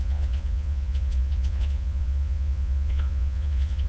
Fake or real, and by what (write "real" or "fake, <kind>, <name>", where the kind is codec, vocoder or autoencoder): fake, vocoder, Vocos